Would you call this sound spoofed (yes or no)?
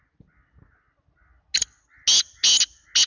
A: no